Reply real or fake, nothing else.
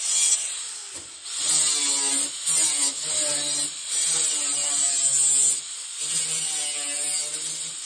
real